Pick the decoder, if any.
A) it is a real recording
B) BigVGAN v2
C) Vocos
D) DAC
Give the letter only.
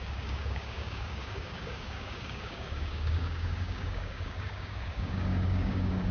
D